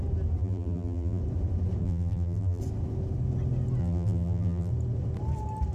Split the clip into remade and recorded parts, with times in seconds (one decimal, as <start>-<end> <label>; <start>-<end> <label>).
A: 0.0-0.4 recorded; 0.4-1.2 remade; 1.2-1.8 recorded; 1.8-2.6 remade; 2.6-3.8 recorded; 3.8-4.7 remade; 4.7-5.7 recorded

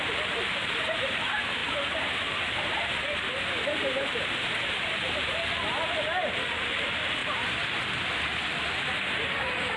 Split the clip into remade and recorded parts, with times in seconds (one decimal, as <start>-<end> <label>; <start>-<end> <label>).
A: 0.0-7.2 remade; 7.2-8.7 recorded; 8.7-9.8 remade

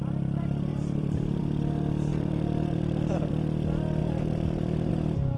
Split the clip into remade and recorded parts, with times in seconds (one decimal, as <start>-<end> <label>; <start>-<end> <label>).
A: 0.0-0.7 recorded; 0.7-1.4 remade; 1.4-2.1 recorded; 2.1-3.3 remade; 3.3-4.0 recorded; 4.0-4.9 remade; 4.9-5.4 recorded

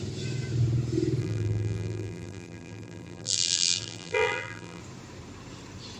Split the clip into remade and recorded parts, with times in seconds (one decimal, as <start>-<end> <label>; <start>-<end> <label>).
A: 0.0-1.2 recorded; 1.2-4.8 remade; 4.8-6.0 recorded

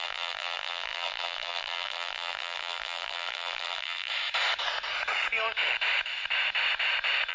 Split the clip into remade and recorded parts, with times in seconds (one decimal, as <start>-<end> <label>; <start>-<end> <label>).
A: 0.0-4.1 remade; 4.1-7.3 recorded

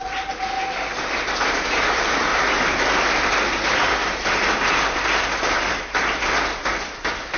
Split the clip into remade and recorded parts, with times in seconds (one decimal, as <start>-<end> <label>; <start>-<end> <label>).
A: 0.0-7.4 remade

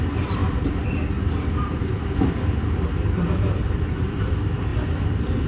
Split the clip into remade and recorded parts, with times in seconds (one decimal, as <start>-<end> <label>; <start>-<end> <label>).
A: 0.0-3.6 recorded; 3.6-4.3 remade; 4.3-5.5 recorded

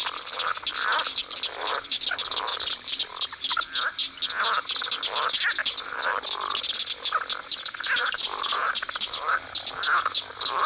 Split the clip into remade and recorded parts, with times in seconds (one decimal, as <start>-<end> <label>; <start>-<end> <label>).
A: 0.0-2.5 recorded; 2.5-3.1 remade; 3.1-8.0 recorded; 8.0-9.2 remade; 9.2-10.7 recorded